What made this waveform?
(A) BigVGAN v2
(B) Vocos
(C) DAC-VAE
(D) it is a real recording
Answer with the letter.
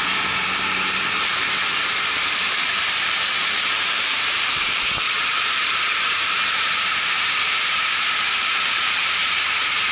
A